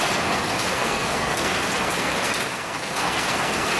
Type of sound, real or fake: fake